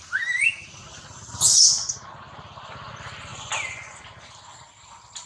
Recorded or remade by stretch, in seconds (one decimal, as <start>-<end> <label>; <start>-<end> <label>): 0.0-3.3 recorded; 3.3-4.0 remade; 4.0-5.3 recorded

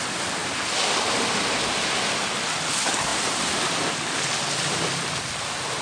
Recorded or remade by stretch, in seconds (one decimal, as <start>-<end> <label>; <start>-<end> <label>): 0.0-5.8 recorded

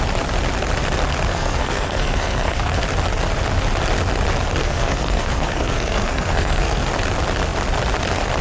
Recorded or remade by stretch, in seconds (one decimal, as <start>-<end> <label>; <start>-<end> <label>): 0.0-1.3 recorded; 1.3-2.8 remade; 2.8-4.6 recorded; 4.6-6.9 remade; 6.9-8.4 recorded

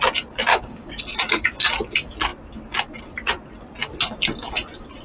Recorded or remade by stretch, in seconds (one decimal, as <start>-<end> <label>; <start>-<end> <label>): 0.0-0.5 recorded; 0.5-1.0 remade; 1.0-5.0 recorded

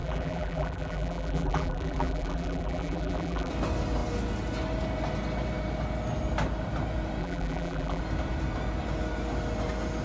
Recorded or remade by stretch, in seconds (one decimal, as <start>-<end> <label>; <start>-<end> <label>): 0.0-3.5 remade; 3.5-7.2 recorded; 7.2-8.0 remade; 8.0-10.0 recorded

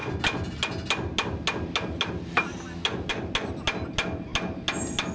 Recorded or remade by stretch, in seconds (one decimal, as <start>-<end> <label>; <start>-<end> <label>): 0.0-5.1 recorded

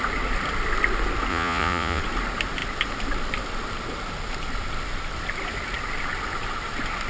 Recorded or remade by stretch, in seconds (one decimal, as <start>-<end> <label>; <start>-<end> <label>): 0.0-1.3 recorded; 1.3-2.0 remade; 2.0-7.1 recorded

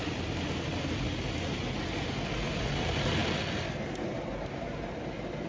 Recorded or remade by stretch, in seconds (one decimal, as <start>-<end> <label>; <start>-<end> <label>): 0.0-5.5 recorded